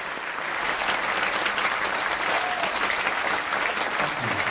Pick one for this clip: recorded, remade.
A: recorded